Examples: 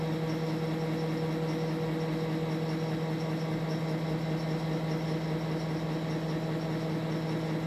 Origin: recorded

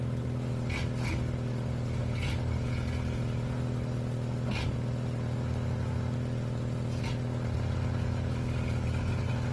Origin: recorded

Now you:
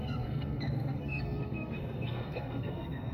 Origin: remade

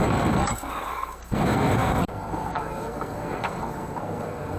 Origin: remade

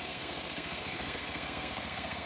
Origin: remade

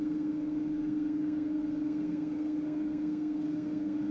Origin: remade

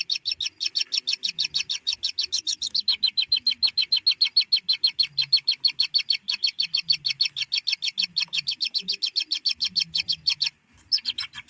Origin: recorded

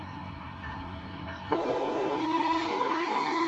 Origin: remade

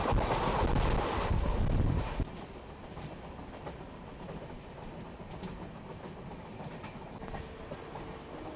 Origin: recorded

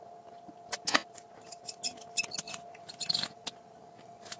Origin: recorded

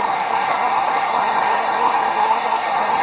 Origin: remade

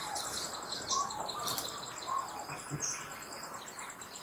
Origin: recorded